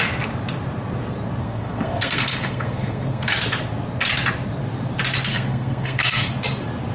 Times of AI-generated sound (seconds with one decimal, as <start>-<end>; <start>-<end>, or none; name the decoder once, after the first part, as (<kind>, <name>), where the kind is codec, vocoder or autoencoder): 1.4-3.3 (codec, SNAC); 5.3-6.3